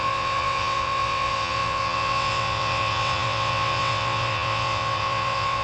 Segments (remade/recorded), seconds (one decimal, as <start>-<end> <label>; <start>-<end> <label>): 0.0-5.6 remade